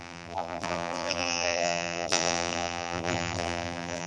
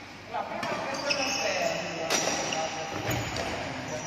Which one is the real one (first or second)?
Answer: second